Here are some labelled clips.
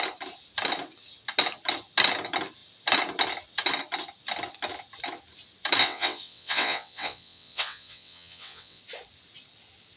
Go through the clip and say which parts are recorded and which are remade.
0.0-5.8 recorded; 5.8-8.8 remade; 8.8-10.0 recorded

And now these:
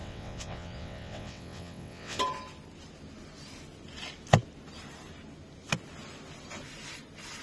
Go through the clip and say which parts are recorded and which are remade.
0.0-2.2 remade; 2.2-7.4 recorded

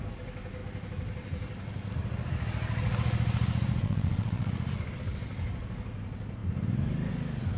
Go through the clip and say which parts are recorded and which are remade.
0.0-3.8 recorded; 3.8-4.5 remade; 4.5-7.6 recorded

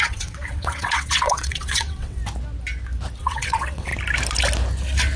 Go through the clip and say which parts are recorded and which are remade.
0.0-2.2 remade; 2.2-3.2 recorded; 3.2-3.9 remade; 3.9-5.2 recorded

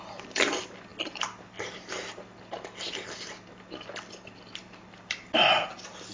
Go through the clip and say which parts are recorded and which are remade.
0.0-6.1 recorded

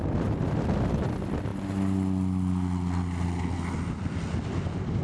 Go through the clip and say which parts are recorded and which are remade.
0.0-5.0 recorded

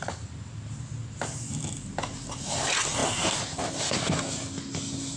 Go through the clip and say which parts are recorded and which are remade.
0.0-5.2 recorded

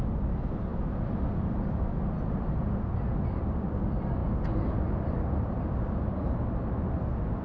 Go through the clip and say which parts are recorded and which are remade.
0.0-7.4 recorded